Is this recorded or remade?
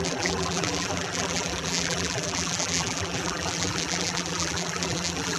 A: remade